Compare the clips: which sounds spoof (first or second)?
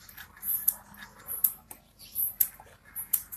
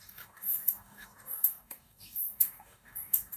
second